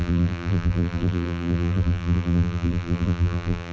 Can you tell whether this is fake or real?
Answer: fake